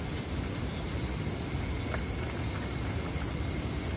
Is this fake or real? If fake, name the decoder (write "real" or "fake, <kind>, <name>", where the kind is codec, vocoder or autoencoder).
real